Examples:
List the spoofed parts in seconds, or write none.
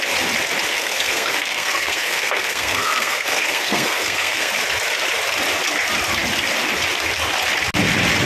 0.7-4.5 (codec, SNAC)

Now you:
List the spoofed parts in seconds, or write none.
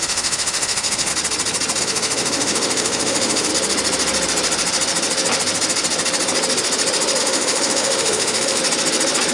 0.0-1.1 (autoencoder, DAC-VAE); 1.8-3.5; 7.2-8.6